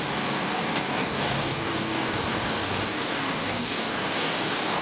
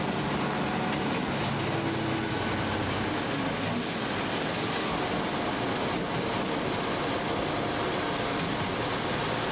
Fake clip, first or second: first